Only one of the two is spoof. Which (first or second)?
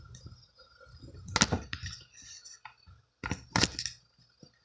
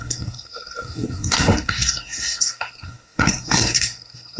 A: second